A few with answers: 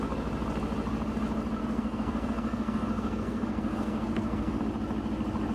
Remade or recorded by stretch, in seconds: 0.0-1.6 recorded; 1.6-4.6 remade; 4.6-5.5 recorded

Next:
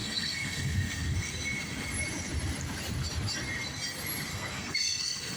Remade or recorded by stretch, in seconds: 0.0-1.3 remade; 1.3-4.3 recorded; 4.3-5.4 remade

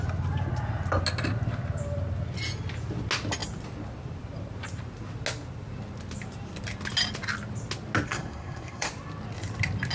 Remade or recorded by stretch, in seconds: 0.0-8.1 recorded; 8.1-8.9 remade; 8.9-9.9 recorded

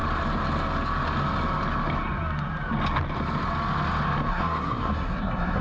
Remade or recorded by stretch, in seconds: 0.0-4.3 recorded; 4.3-5.6 remade